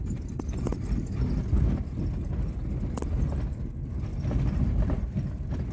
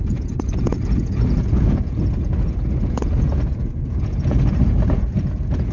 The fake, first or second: second